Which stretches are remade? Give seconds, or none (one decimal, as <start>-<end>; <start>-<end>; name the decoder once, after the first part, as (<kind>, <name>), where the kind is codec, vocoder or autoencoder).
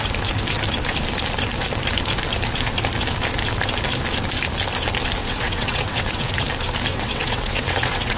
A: 5.2-6.3 (vocoder, WaveNeXt); 6.9-8.2